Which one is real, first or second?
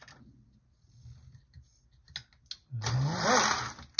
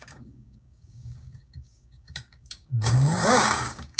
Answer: first